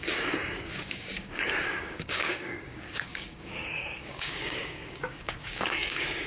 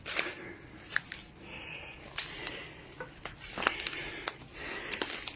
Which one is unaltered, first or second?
second